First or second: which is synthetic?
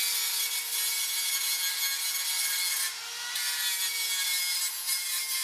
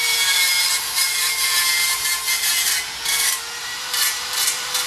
second